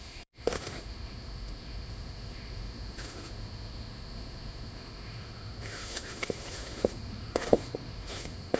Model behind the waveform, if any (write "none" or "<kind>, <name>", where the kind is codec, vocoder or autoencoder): autoencoder, DAC-VAE